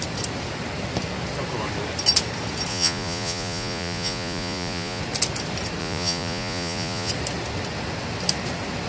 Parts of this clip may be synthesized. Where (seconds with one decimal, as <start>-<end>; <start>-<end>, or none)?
2.7-5.0; 5.8-7.1